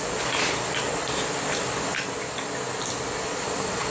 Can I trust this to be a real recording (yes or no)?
yes